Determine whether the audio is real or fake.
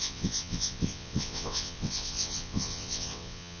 fake